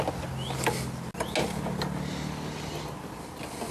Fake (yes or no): no